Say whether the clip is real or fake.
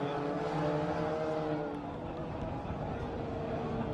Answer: real